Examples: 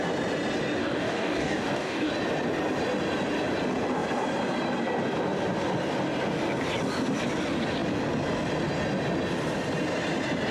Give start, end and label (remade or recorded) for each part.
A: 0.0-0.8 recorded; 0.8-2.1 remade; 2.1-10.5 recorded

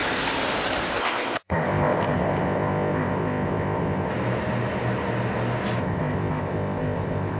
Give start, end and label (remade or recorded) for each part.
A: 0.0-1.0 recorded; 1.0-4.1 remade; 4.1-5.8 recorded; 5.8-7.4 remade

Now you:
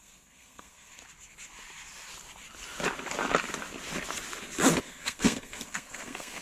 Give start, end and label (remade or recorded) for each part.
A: 0.0-1.0 remade; 1.0-4.8 recorded; 4.8-6.4 remade

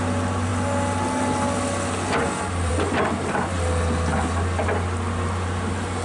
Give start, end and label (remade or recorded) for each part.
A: 0.0-6.0 recorded

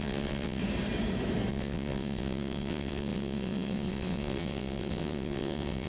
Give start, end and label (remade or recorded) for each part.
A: 0.0-0.6 remade; 0.6-1.5 recorded; 1.5-5.9 remade